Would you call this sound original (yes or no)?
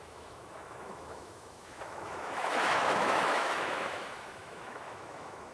no